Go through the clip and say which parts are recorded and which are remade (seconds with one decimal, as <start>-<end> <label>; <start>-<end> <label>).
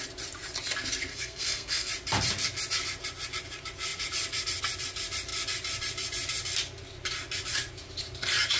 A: 0.0-1.1 recorded; 1.1-1.9 remade; 1.9-8.6 recorded